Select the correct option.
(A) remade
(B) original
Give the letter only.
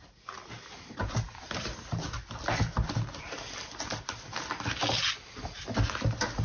B